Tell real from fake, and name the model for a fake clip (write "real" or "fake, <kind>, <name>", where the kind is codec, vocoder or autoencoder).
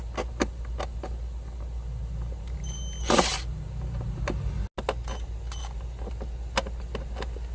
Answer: real